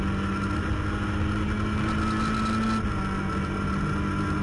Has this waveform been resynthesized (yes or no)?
no